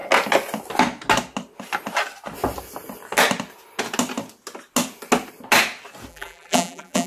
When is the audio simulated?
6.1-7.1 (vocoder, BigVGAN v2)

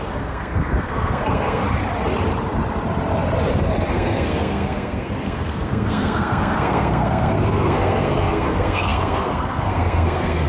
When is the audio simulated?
0.0-1.6 (codec, SNAC); 3.9-10.5

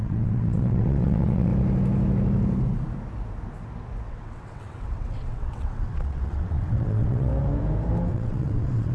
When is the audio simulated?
0.0-1.5 (vocoder, WaveNeXt); 4.1-7.3; 8.1-8.9

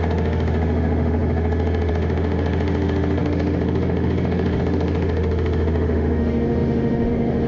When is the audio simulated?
0.0-7.5 (autoencoder, DAC-VAE)

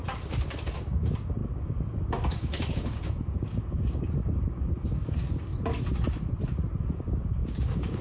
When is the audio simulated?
0.0-5.5 (codec, DAC); 6.9-8.0